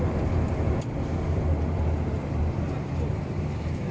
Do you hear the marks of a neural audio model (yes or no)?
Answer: yes